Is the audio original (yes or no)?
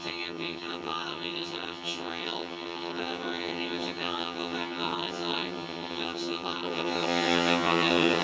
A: no